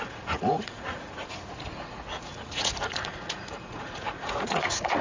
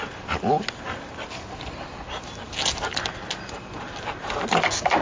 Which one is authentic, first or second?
second